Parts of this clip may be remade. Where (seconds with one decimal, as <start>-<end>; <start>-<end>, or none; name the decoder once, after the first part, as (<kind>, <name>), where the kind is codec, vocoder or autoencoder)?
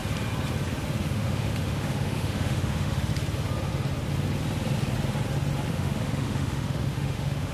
1.0-3.1 (autoencoder, DAC-VAE); 5.7-7.5